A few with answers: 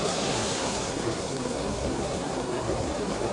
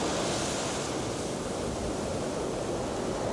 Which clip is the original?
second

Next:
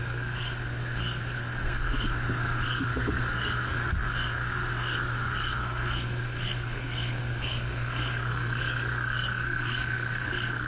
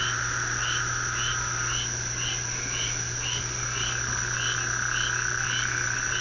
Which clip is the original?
second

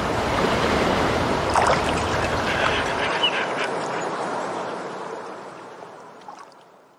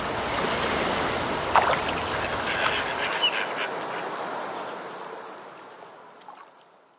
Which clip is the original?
second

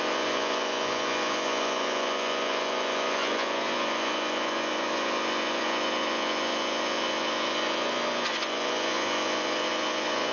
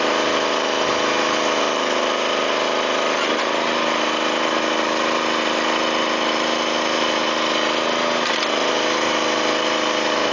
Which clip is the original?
second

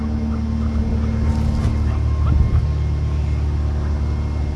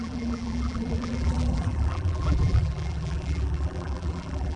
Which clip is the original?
first